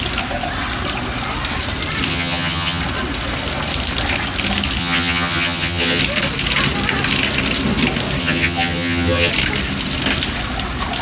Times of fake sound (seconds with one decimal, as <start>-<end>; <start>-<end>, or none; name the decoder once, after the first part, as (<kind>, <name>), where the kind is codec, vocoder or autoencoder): 2.1-2.8 (vocoder, HiFi-GAN); 4.8-6.0; 8.2-9.3